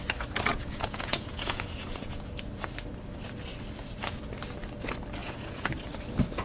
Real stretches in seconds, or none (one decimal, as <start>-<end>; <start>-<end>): 0.0-0.5; 2.3-5.2; 5.7-6.4